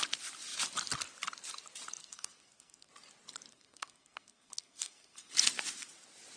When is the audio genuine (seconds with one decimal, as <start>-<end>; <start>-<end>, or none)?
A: 0.0-2.0; 2.9-3.5; 5.3-6.4